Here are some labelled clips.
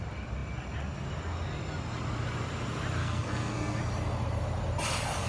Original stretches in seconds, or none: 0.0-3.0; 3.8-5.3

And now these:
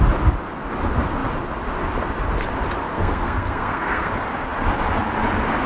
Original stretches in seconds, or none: 0.0-2.9; 4.1-5.7